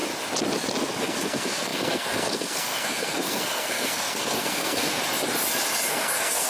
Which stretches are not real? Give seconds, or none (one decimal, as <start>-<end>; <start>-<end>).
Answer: 1.0-5.0; 5.9-6.5